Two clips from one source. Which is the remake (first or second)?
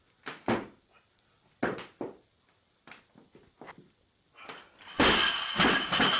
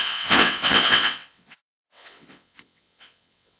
second